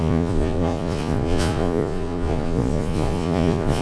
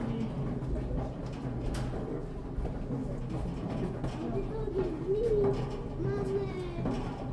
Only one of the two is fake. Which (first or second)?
first